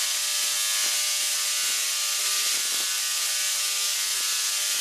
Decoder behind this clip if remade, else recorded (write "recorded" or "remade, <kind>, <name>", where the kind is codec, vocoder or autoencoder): recorded